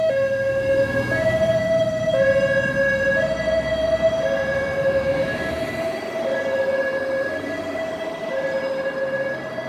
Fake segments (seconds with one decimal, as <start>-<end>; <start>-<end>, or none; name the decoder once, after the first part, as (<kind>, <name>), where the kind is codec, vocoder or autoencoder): none